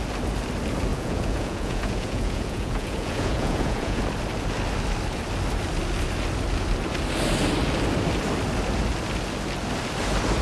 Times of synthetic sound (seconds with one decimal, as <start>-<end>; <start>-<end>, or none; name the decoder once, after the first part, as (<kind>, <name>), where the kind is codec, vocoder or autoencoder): 0.9-4.0 (vocoder, Vocos)